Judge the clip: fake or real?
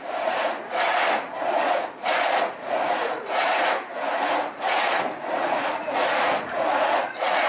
fake